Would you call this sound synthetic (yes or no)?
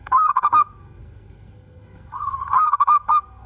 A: yes